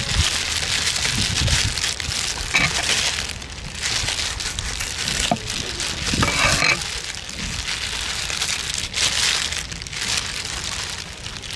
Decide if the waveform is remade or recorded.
recorded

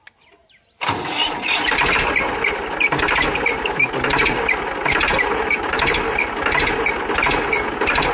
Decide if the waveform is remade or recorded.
recorded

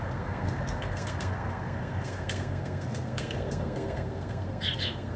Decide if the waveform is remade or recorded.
remade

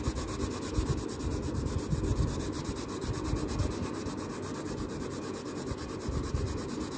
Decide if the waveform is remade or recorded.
recorded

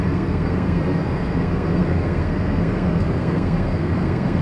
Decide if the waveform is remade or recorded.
remade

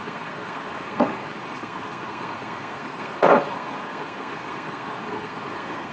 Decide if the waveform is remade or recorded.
remade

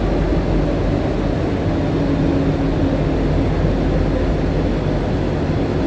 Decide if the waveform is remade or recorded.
recorded